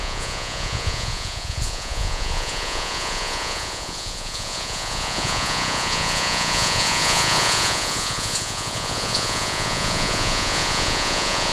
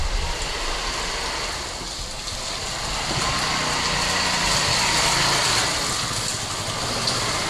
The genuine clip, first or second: second